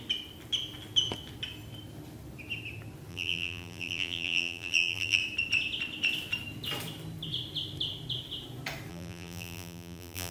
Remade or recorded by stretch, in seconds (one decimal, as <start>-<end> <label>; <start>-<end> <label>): 0.0-3.1 recorded; 3.1-5.2 remade; 5.2-8.9 recorded; 8.9-10.3 remade